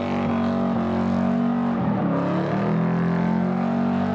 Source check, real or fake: real